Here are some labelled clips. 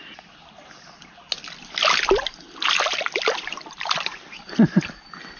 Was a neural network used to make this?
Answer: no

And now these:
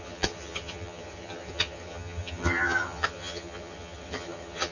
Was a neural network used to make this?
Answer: yes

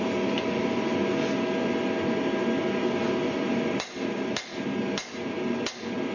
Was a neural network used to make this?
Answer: no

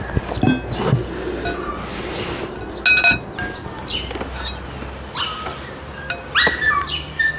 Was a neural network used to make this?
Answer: no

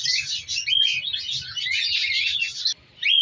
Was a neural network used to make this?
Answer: no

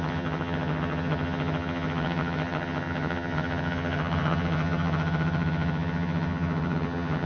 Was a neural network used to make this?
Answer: yes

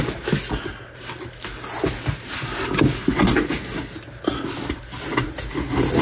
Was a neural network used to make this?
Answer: no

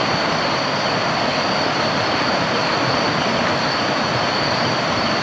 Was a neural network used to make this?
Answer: no